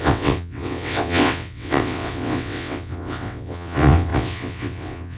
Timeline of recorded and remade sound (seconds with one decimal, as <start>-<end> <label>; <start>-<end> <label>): 0.0-5.2 remade